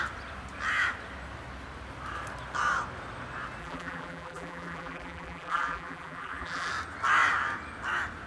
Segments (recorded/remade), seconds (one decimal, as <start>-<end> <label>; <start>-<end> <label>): 0.0-3.6 recorded; 3.6-6.7 remade; 6.7-8.3 recorded

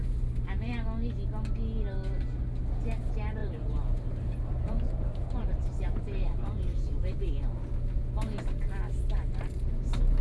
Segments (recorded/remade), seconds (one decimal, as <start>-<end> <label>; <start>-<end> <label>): 0.0-3.4 recorded; 3.4-7.3 remade; 7.3-10.2 recorded

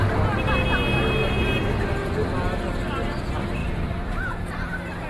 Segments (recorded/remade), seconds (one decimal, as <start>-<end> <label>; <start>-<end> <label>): 0.0-3.6 recorded; 3.6-4.6 remade; 4.6-5.1 recorded

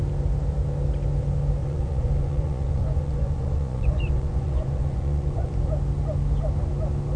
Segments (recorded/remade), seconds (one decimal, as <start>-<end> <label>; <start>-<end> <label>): 0.0-1.6 recorded; 1.6-5.5 remade; 5.5-7.2 recorded

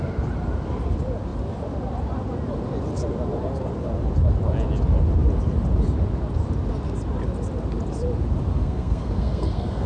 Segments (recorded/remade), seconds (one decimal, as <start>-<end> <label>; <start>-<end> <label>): 0.0-8.5 recorded; 8.5-9.9 remade

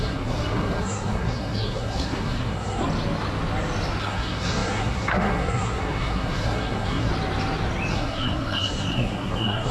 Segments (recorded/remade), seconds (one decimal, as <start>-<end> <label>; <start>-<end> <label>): 0.0-2.8 remade; 2.8-4.0 recorded; 4.0-7.1 remade; 7.1-7.9 recorded; 7.9-9.7 remade

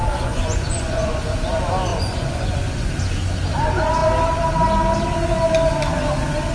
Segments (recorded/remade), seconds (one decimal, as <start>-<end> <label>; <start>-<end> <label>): 0.0-1.2 remade; 1.2-1.9 recorded; 1.9-2.9 remade; 2.9-6.5 recorded